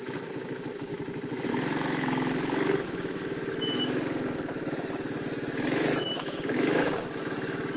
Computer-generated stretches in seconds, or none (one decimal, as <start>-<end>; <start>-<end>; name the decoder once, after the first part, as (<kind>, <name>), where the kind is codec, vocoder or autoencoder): 0.0-0.9 (autoencoder, DAC-VAE); 1.5-7.8